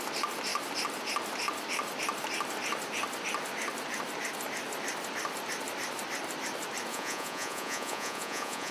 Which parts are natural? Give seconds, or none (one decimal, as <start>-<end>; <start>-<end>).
0.0-6.9